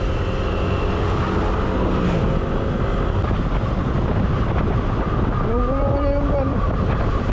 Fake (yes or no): no